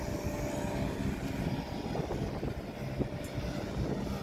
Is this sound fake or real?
real